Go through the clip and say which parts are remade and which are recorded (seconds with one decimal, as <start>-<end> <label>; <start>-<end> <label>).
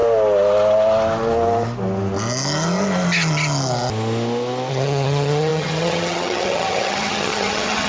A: 0.0-4.7 recorded; 4.7-7.9 remade